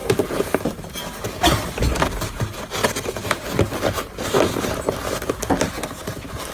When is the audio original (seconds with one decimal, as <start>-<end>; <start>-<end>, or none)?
0.0-3.2; 4.7-6.5